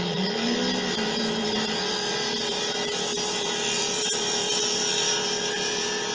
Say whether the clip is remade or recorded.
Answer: remade